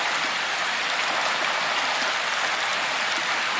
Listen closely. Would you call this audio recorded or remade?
recorded